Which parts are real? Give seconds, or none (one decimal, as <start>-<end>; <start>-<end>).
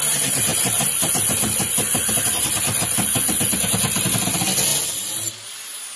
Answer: 0.0-6.0